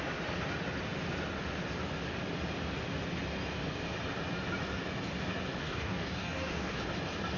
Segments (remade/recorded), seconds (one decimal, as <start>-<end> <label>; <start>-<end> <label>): 0.0-5.6 recorded; 5.6-6.8 remade; 6.8-7.4 recorded